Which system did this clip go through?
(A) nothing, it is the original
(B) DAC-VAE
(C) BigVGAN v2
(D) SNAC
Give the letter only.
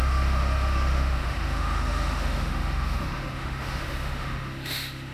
B